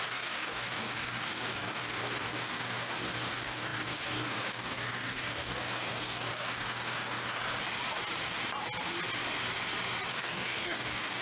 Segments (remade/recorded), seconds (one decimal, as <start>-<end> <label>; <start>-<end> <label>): 0.0-7.4 remade; 7.4-10.1 recorded; 10.1-11.2 remade